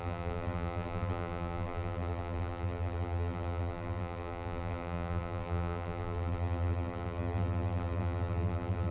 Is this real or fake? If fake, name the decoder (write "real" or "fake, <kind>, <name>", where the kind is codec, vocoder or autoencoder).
fake, vocoder, BigVGAN v2